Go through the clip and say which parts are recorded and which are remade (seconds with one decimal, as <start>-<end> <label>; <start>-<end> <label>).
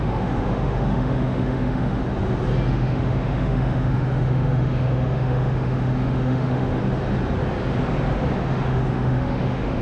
0.0-2.0 remade; 2.0-2.7 recorded; 2.7-6.8 remade; 6.8-8.5 recorded; 8.5-9.8 remade